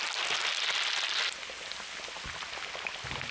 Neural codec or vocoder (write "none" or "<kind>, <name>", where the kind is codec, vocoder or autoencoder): none